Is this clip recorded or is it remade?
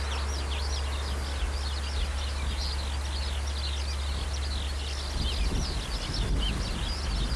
recorded